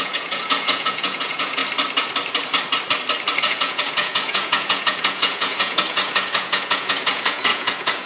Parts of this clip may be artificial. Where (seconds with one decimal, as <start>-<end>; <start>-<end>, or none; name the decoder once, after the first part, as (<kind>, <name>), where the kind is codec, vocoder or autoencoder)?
0.0-1.6 (vocoder, Vocos); 3.4-8.1